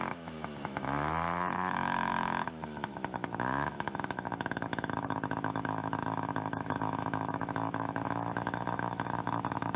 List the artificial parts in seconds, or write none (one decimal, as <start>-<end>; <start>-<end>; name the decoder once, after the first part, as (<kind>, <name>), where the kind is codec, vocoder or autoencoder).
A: 0.0-9.8 (autoencoder, DAC-VAE)